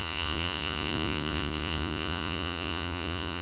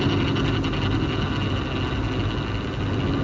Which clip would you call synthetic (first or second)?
first